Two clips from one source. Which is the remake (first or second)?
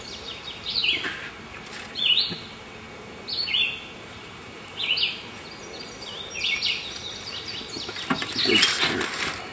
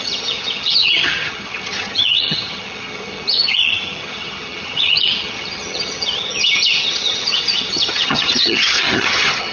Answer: second